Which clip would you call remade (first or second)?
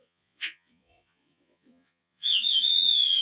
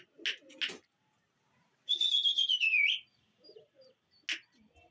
first